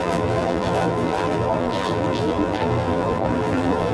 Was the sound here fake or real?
fake